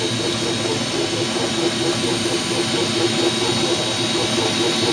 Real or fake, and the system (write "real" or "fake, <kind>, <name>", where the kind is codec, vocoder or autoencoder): real